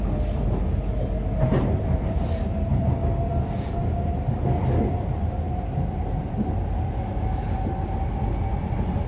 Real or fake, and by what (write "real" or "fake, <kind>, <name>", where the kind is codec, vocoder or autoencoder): real